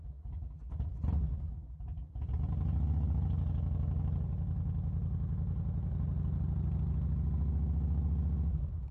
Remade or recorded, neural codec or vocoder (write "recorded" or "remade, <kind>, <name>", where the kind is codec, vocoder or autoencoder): recorded